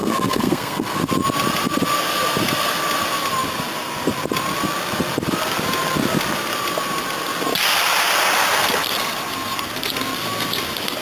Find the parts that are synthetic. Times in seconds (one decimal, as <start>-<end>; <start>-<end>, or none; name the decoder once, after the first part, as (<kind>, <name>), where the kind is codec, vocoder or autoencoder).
0.0-1.1 (codec, SNAC)